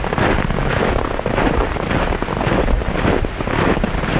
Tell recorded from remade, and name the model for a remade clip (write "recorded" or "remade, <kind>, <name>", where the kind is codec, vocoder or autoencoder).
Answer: recorded